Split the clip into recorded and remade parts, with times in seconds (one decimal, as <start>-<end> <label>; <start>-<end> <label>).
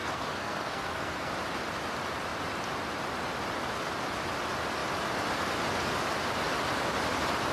0.0-1.3 remade; 1.3-7.5 recorded